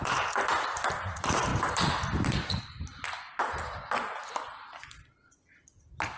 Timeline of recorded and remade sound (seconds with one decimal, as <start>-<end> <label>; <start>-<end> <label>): 0.0-6.2 recorded

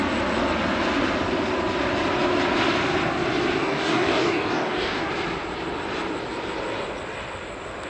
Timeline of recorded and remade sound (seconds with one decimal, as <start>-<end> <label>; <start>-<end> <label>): 0.0-3.6 recorded; 3.6-5.1 remade; 5.1-7.9 recorded

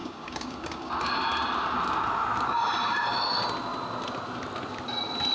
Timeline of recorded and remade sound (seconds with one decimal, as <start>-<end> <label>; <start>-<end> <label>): 0.0-0.9 remade; 0.9-5.3 recorded